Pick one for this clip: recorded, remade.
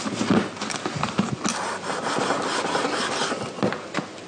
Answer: recorded